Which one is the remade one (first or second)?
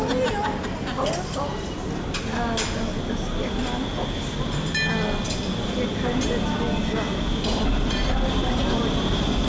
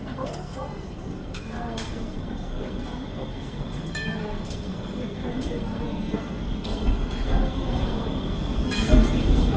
second